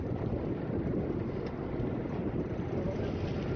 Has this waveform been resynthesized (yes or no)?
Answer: no